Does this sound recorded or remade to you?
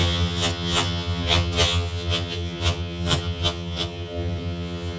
remade